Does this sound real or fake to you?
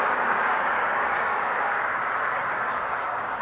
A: fake